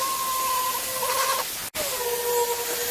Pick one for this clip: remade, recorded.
recorded